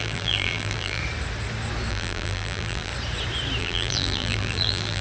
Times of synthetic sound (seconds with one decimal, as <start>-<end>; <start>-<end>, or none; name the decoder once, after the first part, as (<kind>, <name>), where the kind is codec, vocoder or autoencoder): 0.0-1.0 (vocoder, BigVGAN v2); 1.9-2.9; 3.6-5.0